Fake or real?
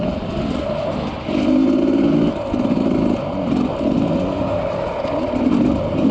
real